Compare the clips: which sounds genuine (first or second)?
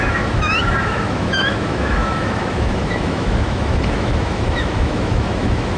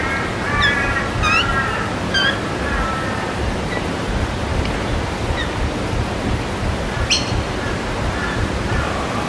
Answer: second